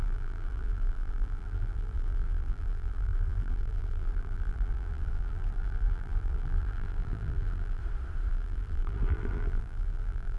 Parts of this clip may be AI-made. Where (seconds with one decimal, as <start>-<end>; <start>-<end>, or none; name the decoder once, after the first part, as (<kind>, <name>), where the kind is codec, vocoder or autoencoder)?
0.0-7.8 (vocoder, BigVGAN v2); 8.3-10.4